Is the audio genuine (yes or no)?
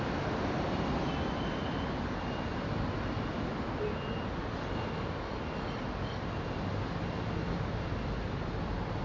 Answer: yes